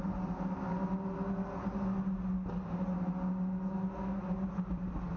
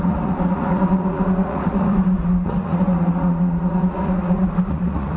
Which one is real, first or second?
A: first